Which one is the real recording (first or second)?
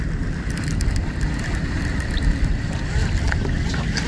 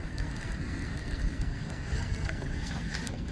first